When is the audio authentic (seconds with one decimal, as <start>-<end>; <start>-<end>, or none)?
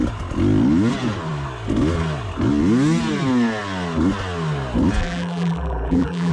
0.0-5.0